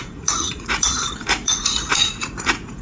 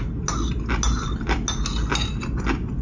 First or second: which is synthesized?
first